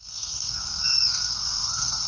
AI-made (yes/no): yes